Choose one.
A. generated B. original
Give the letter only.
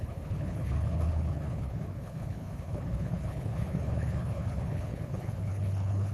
A